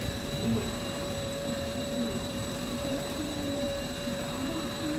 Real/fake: fake